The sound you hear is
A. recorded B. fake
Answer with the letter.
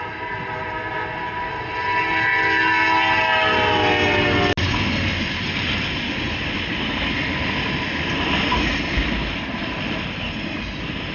A